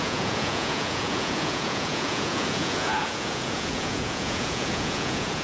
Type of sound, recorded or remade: remade